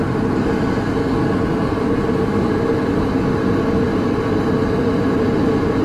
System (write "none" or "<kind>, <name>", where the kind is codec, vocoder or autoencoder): none